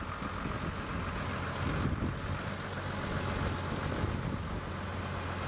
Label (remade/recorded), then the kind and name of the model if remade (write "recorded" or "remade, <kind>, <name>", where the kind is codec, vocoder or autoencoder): recorded